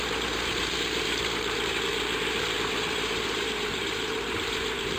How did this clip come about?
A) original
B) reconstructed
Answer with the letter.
B